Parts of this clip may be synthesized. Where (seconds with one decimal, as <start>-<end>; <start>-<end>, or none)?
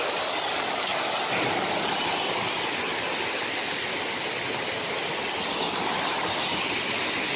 none